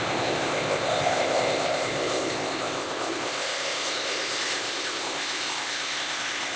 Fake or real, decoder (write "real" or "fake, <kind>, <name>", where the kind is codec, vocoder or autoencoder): fake, codec, ZipCodec